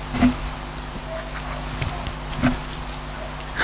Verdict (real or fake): real